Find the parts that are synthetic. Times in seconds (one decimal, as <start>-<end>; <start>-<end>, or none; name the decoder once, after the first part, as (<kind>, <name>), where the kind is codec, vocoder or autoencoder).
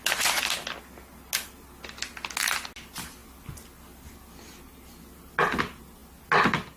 none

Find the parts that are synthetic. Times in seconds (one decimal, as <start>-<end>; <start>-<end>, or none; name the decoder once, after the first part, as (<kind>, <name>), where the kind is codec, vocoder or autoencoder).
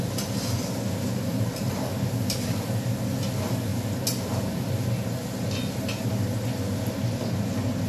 none